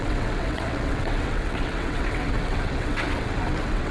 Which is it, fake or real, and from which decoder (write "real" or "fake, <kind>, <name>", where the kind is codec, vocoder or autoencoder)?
fake, vocoder, WaveNeXt